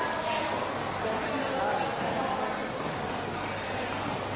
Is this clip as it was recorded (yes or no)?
yes